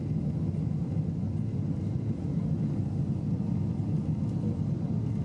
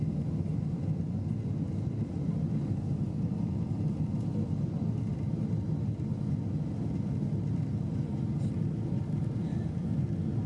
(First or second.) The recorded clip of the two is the first